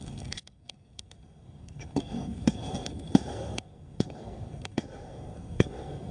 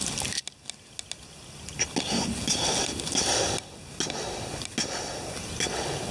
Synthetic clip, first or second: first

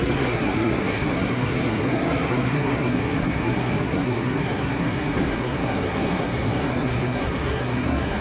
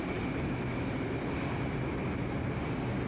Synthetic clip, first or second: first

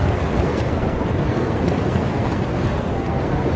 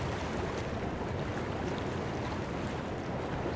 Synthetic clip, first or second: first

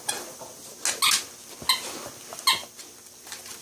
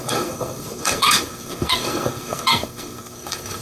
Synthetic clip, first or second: second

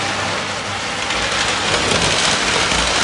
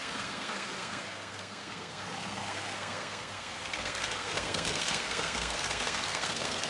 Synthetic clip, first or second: second